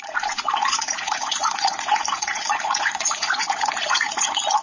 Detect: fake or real fake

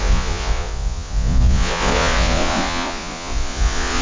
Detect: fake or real fake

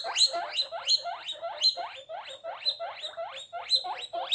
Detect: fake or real real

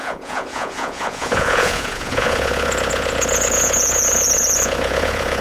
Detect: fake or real fake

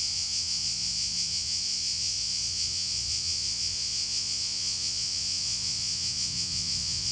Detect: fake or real fake